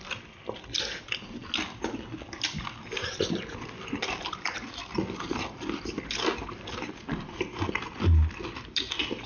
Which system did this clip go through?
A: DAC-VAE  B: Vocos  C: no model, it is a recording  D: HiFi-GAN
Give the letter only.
C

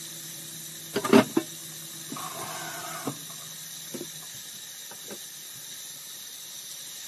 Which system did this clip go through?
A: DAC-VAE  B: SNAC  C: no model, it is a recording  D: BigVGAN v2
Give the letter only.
C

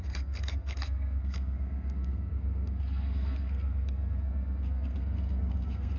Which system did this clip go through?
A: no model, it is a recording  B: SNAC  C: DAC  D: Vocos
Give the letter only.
B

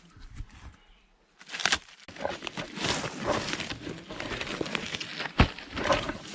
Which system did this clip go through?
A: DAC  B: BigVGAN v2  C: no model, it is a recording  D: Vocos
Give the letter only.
C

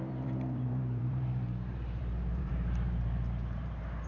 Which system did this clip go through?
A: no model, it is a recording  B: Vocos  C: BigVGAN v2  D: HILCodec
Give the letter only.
C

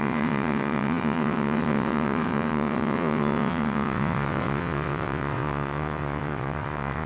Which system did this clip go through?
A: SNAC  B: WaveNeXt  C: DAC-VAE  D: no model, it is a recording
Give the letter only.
B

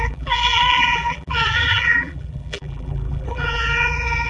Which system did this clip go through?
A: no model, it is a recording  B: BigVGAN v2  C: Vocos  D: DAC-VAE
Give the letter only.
B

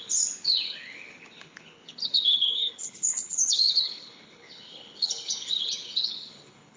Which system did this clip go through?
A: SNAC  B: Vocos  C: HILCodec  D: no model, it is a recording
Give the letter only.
C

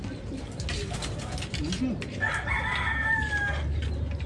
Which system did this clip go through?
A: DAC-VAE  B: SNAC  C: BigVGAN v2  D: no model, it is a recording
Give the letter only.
D